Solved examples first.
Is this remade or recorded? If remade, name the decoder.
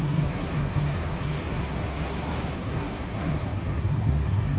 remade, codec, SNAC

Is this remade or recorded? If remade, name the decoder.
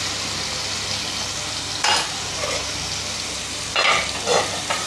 recorded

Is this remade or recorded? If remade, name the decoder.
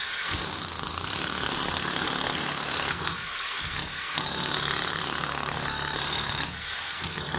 remade, codec, SNAC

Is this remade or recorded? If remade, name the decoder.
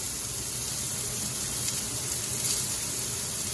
recorded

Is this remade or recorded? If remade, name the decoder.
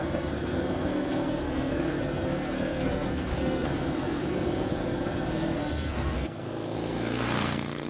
remade, codec, SNAC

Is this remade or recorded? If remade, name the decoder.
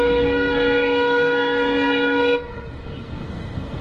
remade, codec, SNAC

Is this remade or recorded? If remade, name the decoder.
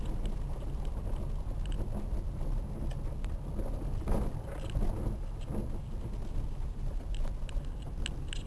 recorded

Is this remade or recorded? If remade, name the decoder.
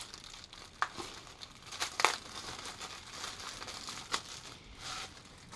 recorded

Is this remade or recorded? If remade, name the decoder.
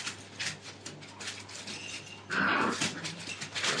recorded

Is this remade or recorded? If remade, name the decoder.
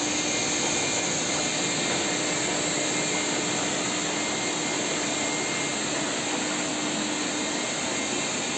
recorded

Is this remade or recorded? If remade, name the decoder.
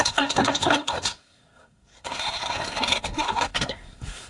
remade, codec, SNAC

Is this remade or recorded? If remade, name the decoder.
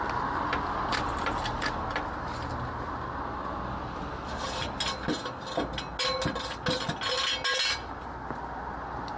recorded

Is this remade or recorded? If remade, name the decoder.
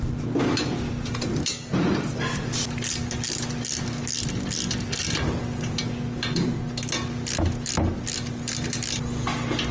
recorded